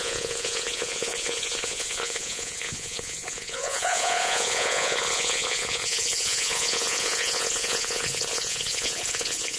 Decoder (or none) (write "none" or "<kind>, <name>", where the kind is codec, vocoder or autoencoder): vocoder, Vocos